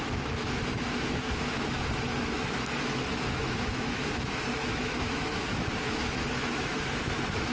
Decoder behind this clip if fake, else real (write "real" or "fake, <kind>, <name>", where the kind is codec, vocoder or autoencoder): fake, autoencoder, DAC-VAE